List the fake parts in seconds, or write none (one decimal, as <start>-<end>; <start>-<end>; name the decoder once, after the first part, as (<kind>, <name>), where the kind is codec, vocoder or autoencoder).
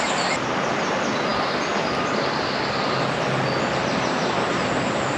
none